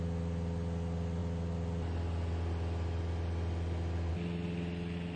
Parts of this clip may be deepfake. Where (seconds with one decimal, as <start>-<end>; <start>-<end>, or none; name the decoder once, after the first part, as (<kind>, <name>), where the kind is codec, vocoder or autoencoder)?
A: none